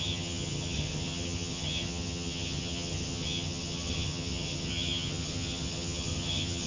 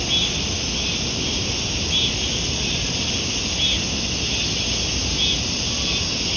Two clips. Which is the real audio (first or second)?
second